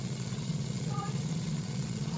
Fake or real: fake